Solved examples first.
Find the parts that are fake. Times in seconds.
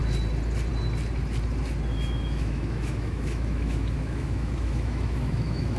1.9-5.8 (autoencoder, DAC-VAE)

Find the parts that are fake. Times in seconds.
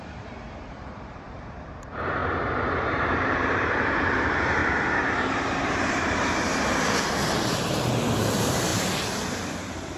0.0-4.6 (vocoder, BigVGAN v2); 5.7-10.0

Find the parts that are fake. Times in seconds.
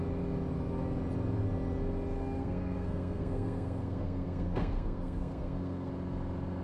2.2-5.9 (codec, SNAC)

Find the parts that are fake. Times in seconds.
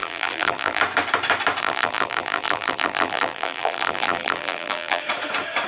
0.0-0.8 (vocoder, BigVGAN v2); 1.6-5.0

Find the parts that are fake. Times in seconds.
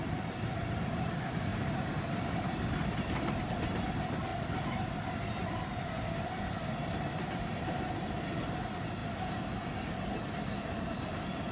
0.0-4.3 (vocoder, BigVGAN v2); 5.1-9.0; 10.8-11.5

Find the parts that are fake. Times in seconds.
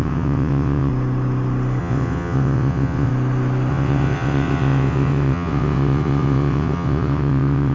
0.0-0.9 (vocoder, WaveNeXt); 1.8-3.1; 3.7-7.7